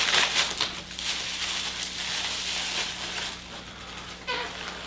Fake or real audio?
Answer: real